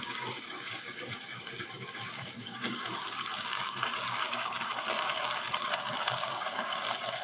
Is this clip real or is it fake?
fake